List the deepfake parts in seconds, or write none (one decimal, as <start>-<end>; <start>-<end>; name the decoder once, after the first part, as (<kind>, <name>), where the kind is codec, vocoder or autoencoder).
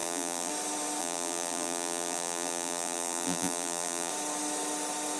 0.0-0.5 (vocoder, BigVGAN v2); 1.0-4.1